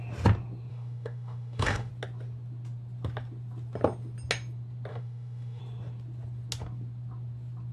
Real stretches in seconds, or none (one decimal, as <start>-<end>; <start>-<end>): 0.0-0.7; 1.9-4.9; 5.6-7.7